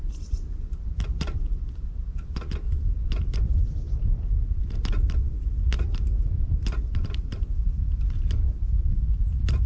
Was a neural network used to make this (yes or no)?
no